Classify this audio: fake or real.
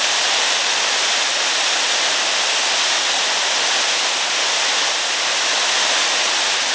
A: real